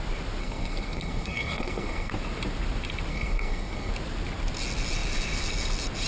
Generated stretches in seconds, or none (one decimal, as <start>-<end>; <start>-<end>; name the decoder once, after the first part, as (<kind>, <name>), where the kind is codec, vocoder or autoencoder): 0.4-2.1 (codec, SNAC); 3.1-3.9